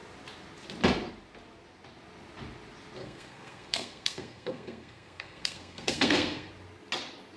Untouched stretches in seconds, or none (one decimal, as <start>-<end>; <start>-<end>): 0.0-3.0; 6.5-7.4